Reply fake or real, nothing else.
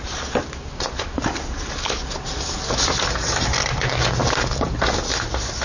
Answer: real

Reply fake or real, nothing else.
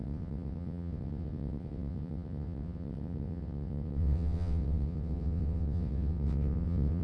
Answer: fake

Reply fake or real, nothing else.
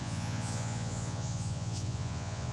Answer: fake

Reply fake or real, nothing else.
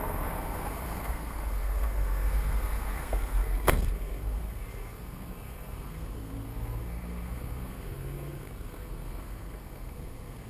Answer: fake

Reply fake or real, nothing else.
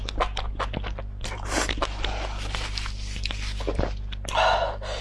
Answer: real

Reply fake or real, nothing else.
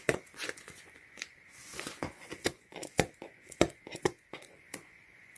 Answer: fake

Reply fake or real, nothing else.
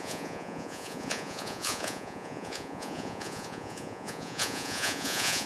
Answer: fake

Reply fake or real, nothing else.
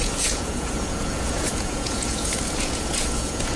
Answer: fake